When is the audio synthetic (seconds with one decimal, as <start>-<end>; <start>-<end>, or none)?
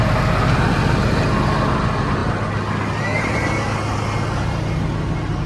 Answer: none